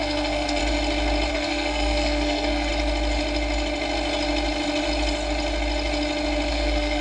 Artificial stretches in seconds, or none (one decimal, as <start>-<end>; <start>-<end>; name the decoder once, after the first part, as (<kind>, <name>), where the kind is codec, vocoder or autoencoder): 0.0-0.6 (codec, SNAC); 1.3-2.7; 6.5-7.0